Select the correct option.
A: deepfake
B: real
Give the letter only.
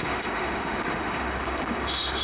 A